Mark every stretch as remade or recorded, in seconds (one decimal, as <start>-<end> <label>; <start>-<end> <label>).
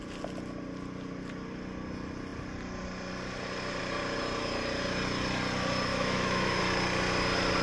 0.0-5.9 recorded; 5.9-6.6 remade; 6.6-7.6 recorded